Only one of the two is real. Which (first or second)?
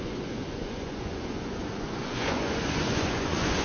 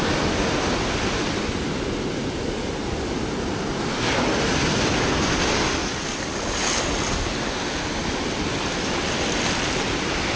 second